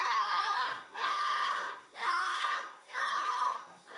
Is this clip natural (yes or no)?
no